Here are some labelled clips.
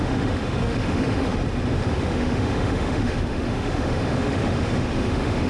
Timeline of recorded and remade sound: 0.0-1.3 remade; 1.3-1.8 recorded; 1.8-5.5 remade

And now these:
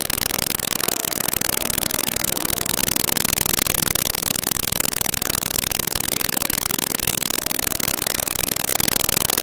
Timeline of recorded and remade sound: 0.0-2.8 remade; 2.8-4.0 recorded; 4.0-8.7 remade; 8.7-9.4 recorded

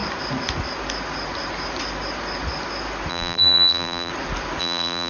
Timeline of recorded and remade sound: 0.0-3.1 recorded; 3.1-4.1 remade; 4.1-4.6 recorded; 4.6-5.1 remade

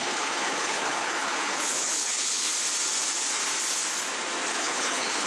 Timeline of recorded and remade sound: 0.0-2.5 remade; 2.5-4.5 recorded; 4.5-5.3 remade

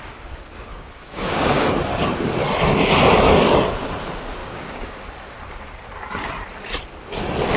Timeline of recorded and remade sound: 0.0-0.7 recorded; 0.7-1.7 remade; 1.7-4.4 recorded; 4.4-5.0 remade; 5.0-7.6 recorded

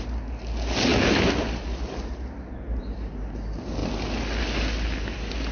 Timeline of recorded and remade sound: 0.0-5.5 recorded

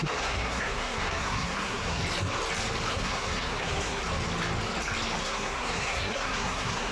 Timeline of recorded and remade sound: 0.0-2.0 remade; 2.0-2.9 recorded; 2.9-4.0 remade; 4.0-5.2 recorded; 5.2-6.9 remade

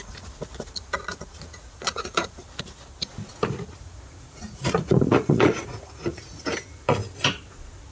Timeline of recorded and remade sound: 0.0-2.4 remade; 2.4-3.7 recorded; 3.7-7.0 remade; 7.0-7.9 recorded